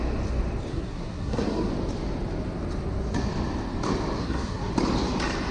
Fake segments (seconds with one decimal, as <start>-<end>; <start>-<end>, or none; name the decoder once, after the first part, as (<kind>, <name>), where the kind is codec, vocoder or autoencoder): 0.7-1.7 (codec, SNAC); 4.2-4.7

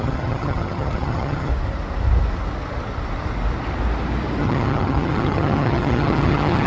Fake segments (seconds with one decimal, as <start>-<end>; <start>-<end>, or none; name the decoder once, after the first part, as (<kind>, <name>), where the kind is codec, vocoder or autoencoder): 0.0-1.5 (vocoder, HiFi-GAN); 4.4-6.7

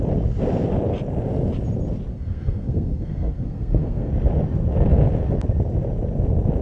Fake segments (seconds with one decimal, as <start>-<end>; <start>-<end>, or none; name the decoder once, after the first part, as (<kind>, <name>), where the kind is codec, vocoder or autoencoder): 2.1-4.1 (codec, SNAC)

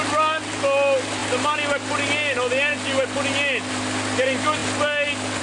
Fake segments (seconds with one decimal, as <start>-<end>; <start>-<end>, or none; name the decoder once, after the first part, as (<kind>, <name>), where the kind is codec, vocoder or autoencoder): none

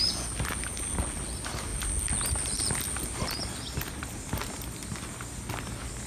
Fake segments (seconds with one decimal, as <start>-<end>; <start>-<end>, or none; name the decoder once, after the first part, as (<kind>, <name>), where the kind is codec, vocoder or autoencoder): none